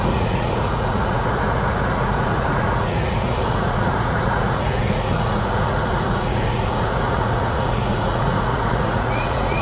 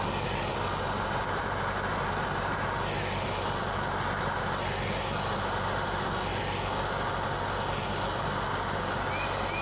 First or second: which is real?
second